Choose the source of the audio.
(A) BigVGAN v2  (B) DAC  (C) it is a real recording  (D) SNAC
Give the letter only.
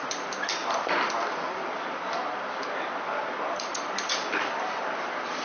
A